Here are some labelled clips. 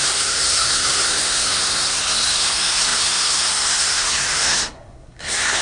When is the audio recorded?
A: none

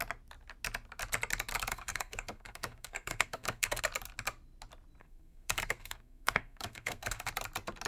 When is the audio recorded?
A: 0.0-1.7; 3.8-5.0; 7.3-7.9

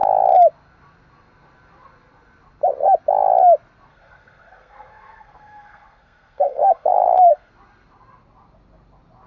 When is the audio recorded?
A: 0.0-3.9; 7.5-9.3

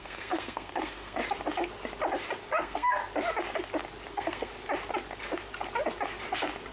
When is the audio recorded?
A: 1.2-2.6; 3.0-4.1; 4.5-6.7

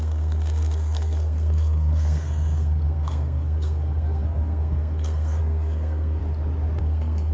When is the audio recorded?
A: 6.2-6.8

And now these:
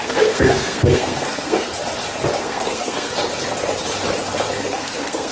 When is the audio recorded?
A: 1.7-2.4; 3.1-4.6

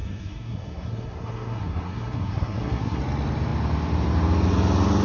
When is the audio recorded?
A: 3.0-5.0